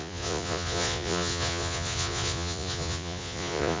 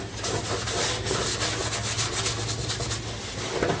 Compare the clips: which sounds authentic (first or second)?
second